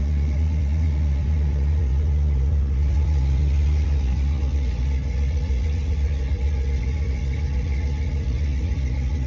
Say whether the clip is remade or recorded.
remade